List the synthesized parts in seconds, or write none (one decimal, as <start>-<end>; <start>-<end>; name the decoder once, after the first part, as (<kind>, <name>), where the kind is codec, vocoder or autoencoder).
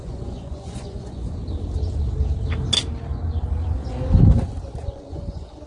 0.0-1.4 (vocoder, Vocos); 4.8-5.7